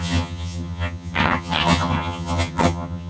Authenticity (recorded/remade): remade